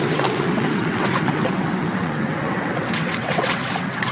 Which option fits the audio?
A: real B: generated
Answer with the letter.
B